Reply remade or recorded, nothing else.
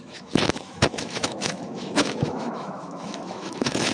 remade